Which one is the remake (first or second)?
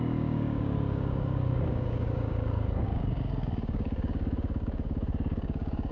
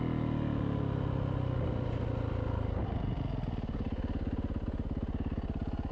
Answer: first